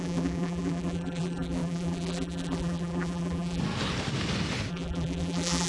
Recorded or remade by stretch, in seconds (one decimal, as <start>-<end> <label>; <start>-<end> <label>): 0.0-3.6 remade; 3.6-4.7 recorded; 4.7-5.7 remade